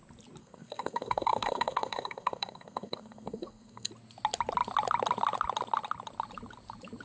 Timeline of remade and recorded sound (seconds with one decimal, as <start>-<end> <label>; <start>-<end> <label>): 0.0-0.4 recorded; 0.4-3.9 remade; 3.9-7.0 recorded